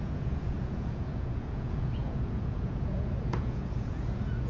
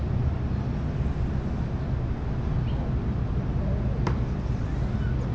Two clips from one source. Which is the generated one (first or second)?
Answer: first